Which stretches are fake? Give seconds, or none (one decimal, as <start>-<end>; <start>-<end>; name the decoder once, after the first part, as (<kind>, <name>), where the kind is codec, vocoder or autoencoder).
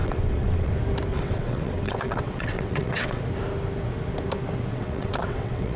0.0-0.7 (vocoder, WaveNeXt); 1.1-3.2; 4.7-5.8